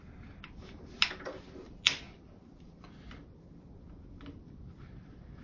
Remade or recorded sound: recorded